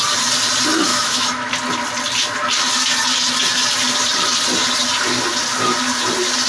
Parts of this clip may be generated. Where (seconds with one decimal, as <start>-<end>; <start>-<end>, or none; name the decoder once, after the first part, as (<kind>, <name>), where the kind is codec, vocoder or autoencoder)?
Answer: 0.9-1.5 (autoencoder, DAC-VAE)